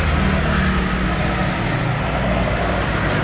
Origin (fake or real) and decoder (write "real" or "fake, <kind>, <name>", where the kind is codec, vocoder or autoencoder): real